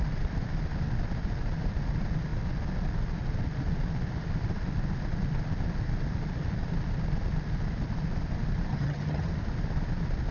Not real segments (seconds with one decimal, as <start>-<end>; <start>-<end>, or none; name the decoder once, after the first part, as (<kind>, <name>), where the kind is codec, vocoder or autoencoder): 8.7-9.3 (vocoder, HiFi-GAN)